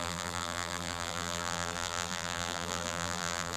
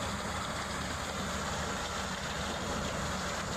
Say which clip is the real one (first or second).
second